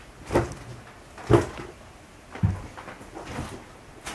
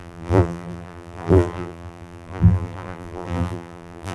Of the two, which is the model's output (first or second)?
second